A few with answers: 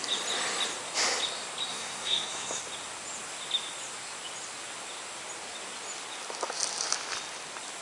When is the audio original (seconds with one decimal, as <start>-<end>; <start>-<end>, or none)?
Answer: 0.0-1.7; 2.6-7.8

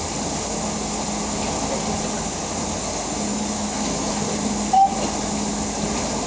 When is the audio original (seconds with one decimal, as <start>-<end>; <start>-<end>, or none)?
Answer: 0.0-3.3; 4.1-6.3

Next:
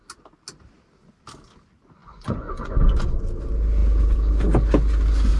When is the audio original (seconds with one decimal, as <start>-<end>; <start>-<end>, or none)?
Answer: 0.0-2.0; 3.2-5.4

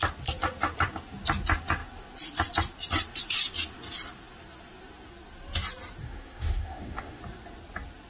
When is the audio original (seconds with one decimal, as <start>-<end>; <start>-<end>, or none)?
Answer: 0.0-6.0; 7.2-8.1